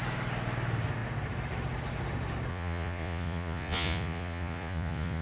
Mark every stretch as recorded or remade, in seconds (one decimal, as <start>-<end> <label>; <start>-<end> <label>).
0.0-2.5 recorded; 2.5-5.2 remade